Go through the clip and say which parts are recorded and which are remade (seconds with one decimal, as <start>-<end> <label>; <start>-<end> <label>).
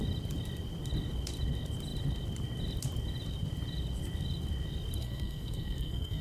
0.0-5.0 recorded; 5.0-6.2 remade